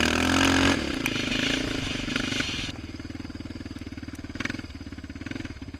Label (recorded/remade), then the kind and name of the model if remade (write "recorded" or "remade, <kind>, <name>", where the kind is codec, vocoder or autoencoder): recorded